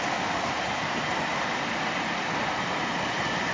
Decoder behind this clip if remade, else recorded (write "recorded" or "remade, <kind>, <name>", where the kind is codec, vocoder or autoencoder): recorded